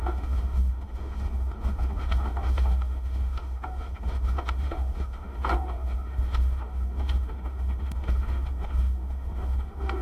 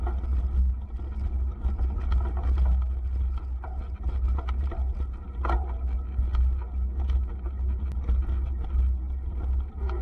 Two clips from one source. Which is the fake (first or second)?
first